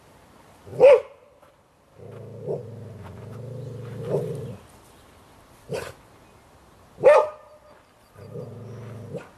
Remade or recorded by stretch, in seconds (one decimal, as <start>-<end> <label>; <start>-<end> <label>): 0.0-9.4 recorded